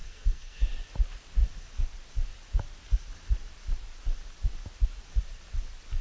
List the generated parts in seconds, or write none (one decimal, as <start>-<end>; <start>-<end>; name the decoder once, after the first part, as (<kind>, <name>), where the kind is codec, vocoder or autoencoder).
0.0-0.6 (codec, SNAC)